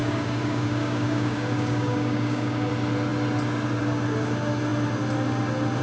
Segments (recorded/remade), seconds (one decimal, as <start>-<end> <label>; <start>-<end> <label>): 0.0-2.7 remade; 2.7-5.8 recorded